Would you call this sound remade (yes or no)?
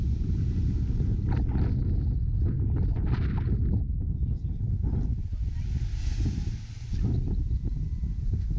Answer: no